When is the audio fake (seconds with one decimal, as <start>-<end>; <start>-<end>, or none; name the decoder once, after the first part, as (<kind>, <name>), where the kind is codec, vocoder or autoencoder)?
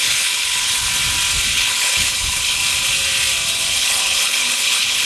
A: 0.0-0.9 (codec, HILCodec); 1.5-2.6; 3.7-5.1